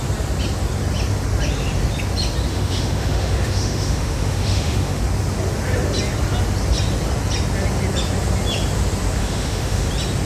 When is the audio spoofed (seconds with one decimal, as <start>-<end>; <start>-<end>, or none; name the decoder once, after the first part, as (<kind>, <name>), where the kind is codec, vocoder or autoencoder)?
2.5-5.0 (autoencoder, DAC-VAE); 9.2-9.9